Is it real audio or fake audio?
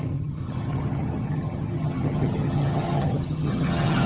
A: fake